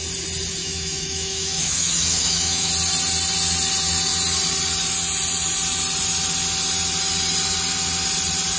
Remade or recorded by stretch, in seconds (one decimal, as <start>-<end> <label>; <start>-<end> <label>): 0.0-0.6 recorded; 0.6-2.7 remade; 2.7-8.6 recorded

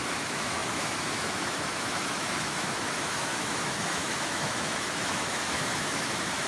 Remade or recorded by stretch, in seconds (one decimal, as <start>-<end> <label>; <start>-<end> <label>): 0.0-6.5 remade

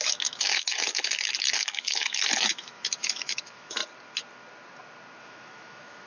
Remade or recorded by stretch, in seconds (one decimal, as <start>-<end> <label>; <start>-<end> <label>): 0.0-3.8 remade; 3.8-5.2 recorded; 5.2-6.1 remade